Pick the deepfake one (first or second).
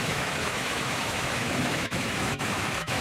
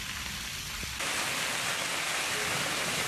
first